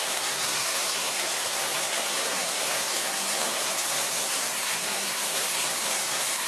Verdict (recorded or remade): remade